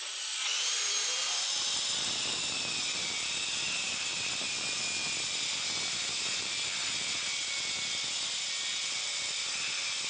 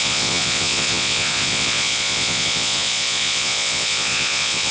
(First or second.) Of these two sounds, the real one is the first